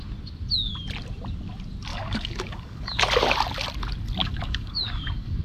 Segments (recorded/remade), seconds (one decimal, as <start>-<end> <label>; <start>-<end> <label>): 0.0-1.9 recorded; 1.9-3.0 remade; 3.0-4.2 recorded; 4.2-5.4 remade